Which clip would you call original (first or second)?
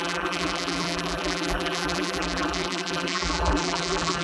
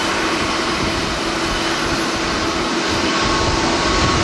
second